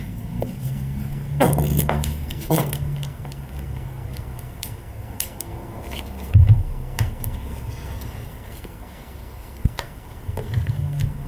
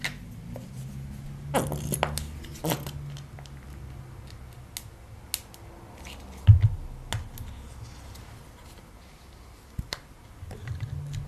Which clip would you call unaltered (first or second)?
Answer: second